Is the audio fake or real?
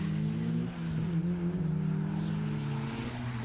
real